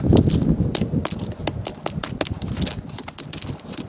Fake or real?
real